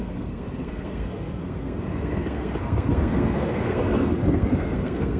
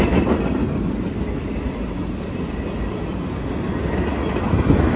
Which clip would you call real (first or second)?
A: second